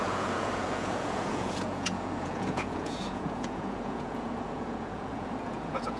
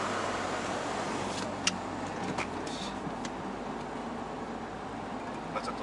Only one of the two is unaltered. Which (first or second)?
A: second